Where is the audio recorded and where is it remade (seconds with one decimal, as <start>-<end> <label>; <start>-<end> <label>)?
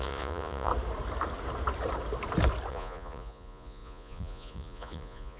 0.0-0.7 remade; 0.7-2.7 recorded; 2.7-5.4 remade